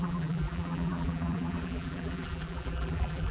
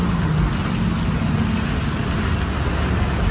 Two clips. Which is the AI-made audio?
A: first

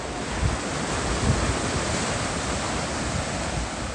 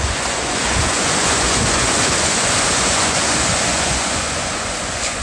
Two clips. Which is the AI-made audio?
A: second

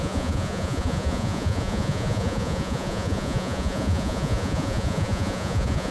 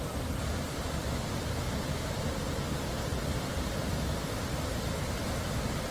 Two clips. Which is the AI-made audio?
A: first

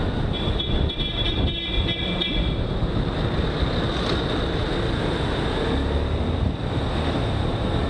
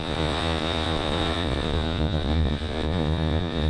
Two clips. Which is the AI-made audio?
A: second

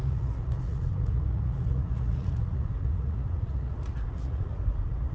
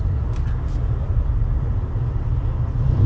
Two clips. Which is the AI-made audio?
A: first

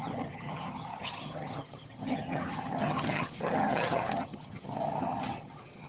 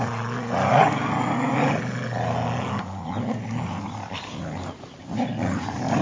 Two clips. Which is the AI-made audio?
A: first